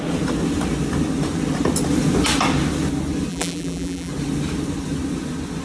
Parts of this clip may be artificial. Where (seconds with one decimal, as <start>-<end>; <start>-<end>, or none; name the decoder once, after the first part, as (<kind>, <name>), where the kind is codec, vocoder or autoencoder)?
3.3-4.1 (vocoder, BigVGAN v2)